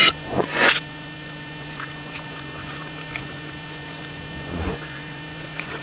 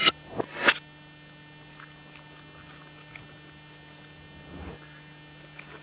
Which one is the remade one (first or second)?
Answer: first